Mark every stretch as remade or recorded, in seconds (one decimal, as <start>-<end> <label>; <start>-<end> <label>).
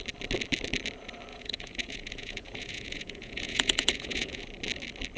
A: 0.0-1.3 recorded; 1.3-4.4 remade; 4.4-5.2 recorded